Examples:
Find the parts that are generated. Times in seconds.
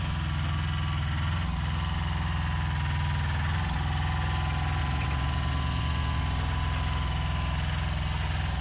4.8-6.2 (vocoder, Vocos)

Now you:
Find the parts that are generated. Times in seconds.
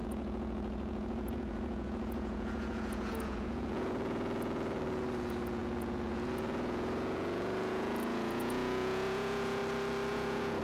0.0-9.6 (vocoder, Vocos); 10.1-10.6